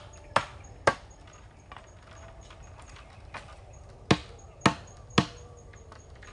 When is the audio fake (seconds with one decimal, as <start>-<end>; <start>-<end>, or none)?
none